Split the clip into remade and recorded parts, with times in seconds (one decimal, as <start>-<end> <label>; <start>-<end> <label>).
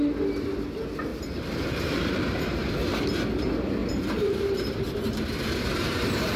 0.0-1.1 recorded; 1.1-2.7 remade; 2.7-3.8 recorded; 3.8-6.4 remade